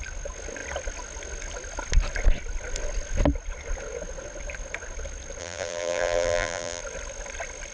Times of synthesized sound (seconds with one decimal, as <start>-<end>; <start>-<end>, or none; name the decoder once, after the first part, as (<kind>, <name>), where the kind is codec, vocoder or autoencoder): 5.4-6.8 (vocoder, BigVGAN v2)